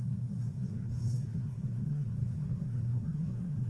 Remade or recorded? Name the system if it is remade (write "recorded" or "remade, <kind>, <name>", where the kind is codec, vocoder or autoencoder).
remade, codec, SNAC